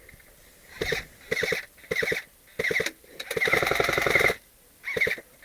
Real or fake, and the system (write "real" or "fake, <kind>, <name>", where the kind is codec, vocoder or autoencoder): real